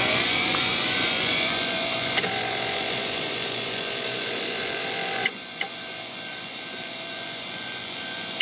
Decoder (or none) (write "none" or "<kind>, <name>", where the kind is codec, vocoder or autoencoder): vocoder, Vocos